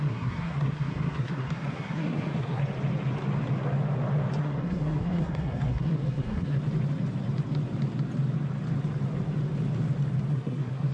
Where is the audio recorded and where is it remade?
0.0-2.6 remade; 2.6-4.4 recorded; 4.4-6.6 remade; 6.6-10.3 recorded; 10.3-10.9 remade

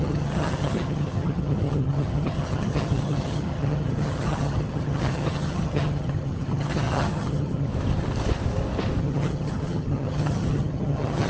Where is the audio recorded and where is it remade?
0.0-7.7 remade; 7.7-9.0 recorded; 9.0-11.3 remade

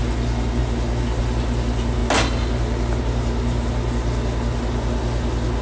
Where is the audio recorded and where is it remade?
0.0-5.6 recorded

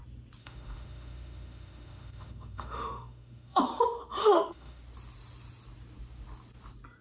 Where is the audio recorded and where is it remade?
0.0-0.4 recorded; 0.4-3.6 remade; 3.6-4.2 recorded; 4.2-4.8 remade; 4.8-7.0 recorded

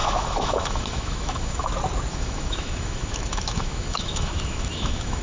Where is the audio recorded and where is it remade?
0.0-1.7 remade; 1.7-2.1 recorded; 2.1-5.2 remade

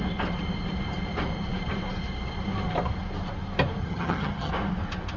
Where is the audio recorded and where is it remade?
0.0-3.8 recorded; 3.8-4.5 remade; 4.5-5.2 recorded